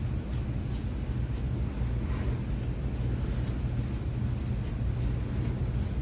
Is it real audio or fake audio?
real